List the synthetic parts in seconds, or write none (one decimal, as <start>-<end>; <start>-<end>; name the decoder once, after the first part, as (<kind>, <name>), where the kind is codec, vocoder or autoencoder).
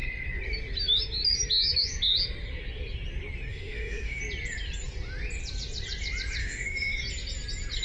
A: 3.5-4.2 (autoencoder, DAC-VAE); 6.4-7.0